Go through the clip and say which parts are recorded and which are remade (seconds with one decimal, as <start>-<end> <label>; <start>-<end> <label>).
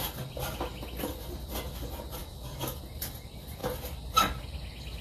0.0-2.2 recorded; 2.2-2.8 remade; 2.8-5.0 recorded